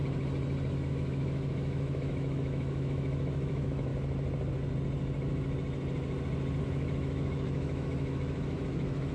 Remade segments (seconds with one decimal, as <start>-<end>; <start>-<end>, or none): 0.7-3.9; 6.6-9.1